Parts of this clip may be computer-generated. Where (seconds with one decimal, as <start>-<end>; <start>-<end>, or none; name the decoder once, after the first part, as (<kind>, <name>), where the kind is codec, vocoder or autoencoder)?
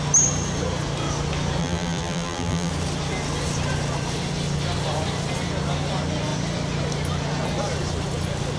1.6-2.7 (vocoder, BigVGAN v2)